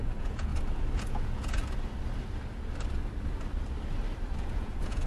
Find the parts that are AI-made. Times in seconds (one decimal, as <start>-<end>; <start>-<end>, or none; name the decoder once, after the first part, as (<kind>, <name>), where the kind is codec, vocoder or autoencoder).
0.0-0.5 (vocoder, Vocos); 1.0-1.6; 4.4-5.1